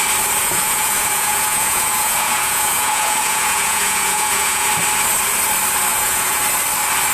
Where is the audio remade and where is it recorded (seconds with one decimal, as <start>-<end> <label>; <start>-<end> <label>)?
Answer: 0.0-0.4 recorded; 0.4-4.7 remade; 4.7-5.9 recorded; 5.9-6.4 remade; 6.4-7.1 recorded

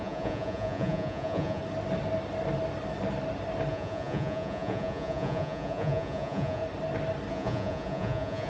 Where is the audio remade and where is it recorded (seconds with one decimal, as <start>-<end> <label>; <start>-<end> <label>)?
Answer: 0.0-1.6 remade; 1.6-3.7 recorded; 3.7-6.6 remade; 6.6-7.3 recorded; 7.3-8.5 remade

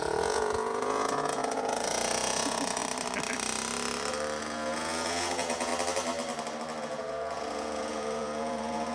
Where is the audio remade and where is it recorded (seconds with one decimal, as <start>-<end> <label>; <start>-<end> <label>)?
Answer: 0.0-2.8 remade; 2.8-4.4 recorded; 4.4-5.7 remade; 5.7-6.8 recorded; 6.8-8.9 remade

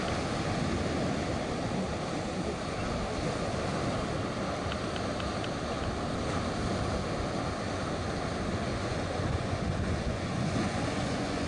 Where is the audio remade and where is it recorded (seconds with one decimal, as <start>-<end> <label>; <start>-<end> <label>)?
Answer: 0.0-8.7 recorded; 8.7-11.5 remade

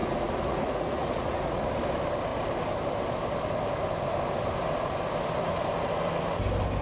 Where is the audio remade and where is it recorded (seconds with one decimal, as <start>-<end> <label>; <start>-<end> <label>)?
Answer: 0.0-1.7 remade; 1.7-6.8 recorded

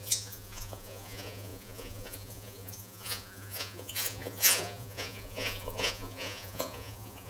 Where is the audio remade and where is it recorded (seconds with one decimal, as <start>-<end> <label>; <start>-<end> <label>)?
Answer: 0.0-7.3 remade